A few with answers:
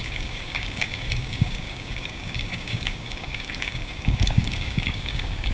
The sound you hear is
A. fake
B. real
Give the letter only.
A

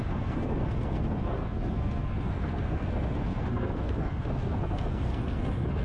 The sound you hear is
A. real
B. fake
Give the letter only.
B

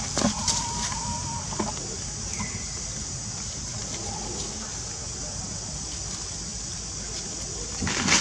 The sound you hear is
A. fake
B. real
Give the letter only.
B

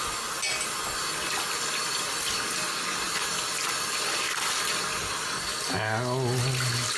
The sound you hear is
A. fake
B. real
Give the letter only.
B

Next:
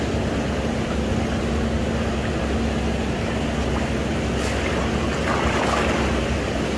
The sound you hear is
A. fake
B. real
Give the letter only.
B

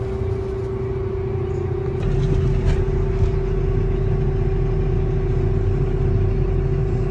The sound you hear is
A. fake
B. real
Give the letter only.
B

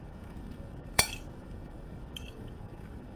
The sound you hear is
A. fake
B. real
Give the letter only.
A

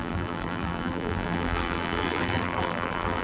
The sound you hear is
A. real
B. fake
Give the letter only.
B